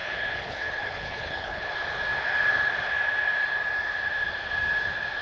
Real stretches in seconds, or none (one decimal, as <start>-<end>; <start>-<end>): 1.7-5.2